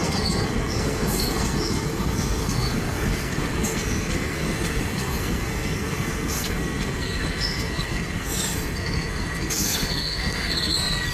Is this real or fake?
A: fake